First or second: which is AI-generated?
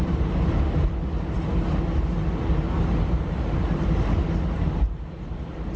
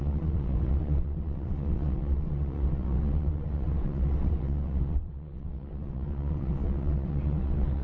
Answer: second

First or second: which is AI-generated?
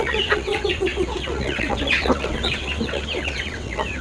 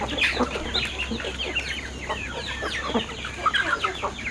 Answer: first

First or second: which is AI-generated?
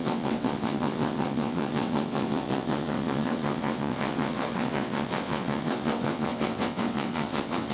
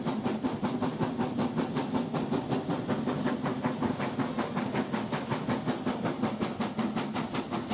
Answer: first